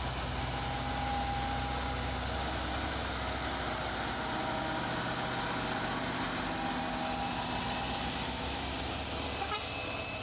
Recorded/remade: recorded